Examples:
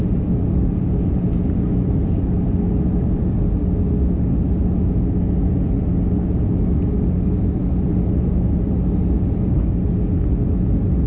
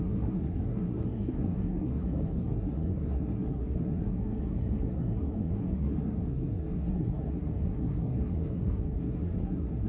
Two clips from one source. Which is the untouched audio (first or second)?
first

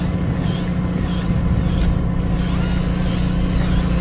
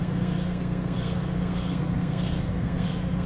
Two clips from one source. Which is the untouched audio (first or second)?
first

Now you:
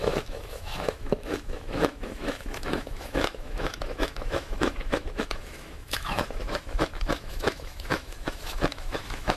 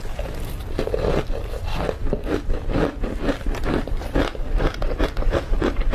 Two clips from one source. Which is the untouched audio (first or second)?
second